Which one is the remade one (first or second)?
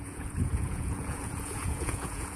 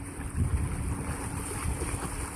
first